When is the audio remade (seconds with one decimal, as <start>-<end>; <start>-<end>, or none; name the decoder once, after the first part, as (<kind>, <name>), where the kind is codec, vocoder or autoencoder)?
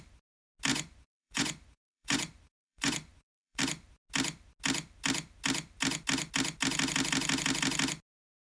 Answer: 0.7-3.6 (vocoder, Vocos)